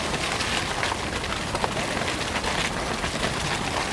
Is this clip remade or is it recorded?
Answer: recorded